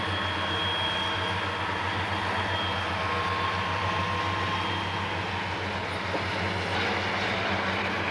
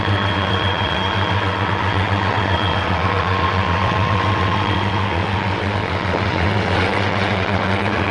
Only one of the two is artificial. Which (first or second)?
second